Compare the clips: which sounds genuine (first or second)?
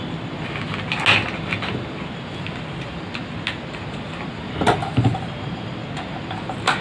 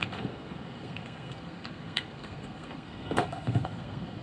first